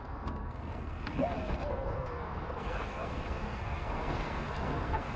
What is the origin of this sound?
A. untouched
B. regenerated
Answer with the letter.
B